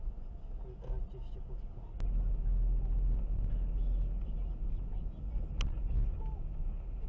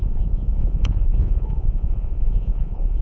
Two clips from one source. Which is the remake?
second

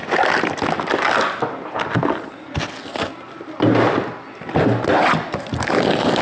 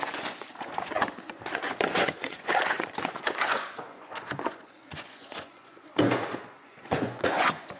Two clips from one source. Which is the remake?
second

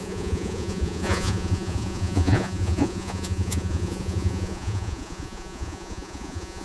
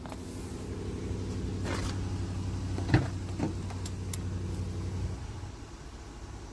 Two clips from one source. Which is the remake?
first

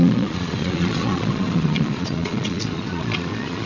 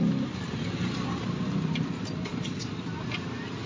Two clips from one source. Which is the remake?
first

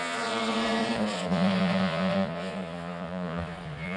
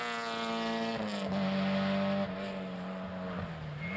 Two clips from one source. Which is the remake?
first